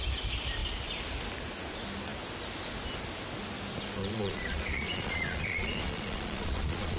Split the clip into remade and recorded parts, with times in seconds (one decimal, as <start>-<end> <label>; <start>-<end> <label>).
0.0-4.0 recorded; 4.0-7.0 remade